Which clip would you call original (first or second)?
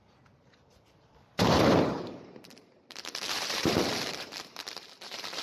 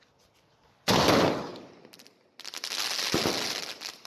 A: second